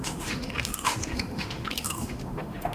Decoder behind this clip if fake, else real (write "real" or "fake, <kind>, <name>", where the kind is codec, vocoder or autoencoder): fake, autoencoder, DAC-VAE